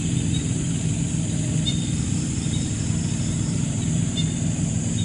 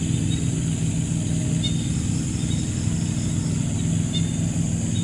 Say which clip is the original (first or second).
second